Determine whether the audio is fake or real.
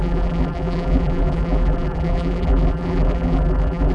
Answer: fake